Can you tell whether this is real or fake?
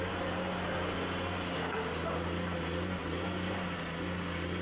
real